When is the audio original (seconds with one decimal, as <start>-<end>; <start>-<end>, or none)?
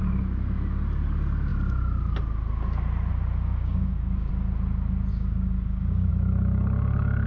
0.0-3.5; 4.3-5.1; 6.1-7.3